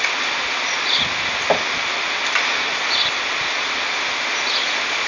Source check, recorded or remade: recorded